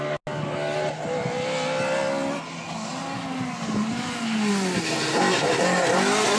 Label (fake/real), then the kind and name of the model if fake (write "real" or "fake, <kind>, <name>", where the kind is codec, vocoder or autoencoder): real